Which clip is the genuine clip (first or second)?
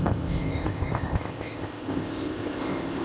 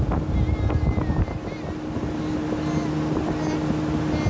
second